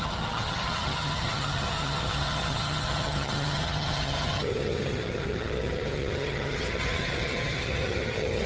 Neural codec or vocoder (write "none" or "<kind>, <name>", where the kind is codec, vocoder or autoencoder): vocoder, HiFi-GAN